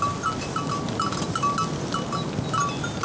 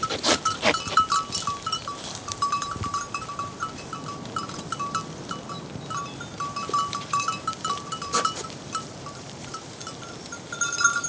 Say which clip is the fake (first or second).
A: second